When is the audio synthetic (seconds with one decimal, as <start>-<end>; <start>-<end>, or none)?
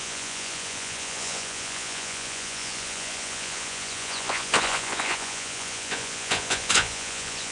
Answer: 0.0-7.5